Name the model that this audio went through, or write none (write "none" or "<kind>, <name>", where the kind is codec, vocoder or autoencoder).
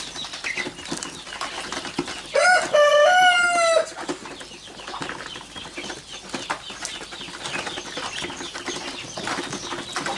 none